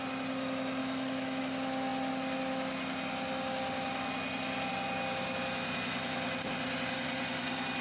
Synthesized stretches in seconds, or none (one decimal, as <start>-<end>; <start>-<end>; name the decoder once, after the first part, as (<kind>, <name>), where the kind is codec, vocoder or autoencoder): 0.8-1.4 (autoencoder, DAC-VAE)